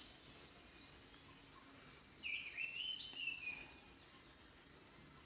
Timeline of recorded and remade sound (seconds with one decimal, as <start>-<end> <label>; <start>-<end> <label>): 0.0-5.3 recorded